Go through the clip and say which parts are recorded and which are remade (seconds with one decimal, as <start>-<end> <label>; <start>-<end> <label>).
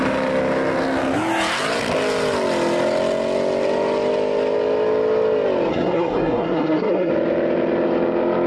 0.0-5.7 recorded; 5.7-7.1 remade; 7.1-8.5 recorded